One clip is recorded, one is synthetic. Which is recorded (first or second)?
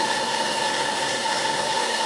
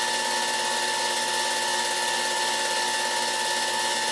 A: second